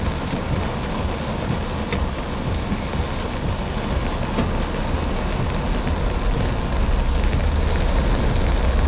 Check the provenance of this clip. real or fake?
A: real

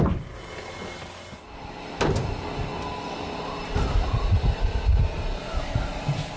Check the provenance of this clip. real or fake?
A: real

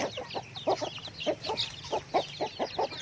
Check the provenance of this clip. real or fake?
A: real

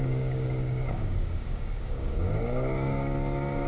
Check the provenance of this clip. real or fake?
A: fake